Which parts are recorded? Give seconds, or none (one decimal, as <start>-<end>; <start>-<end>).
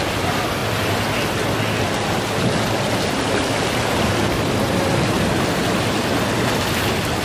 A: 0.0-7.2